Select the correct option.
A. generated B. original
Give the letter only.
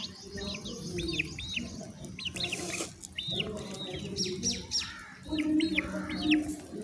B